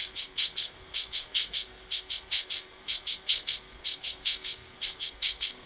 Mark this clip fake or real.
fake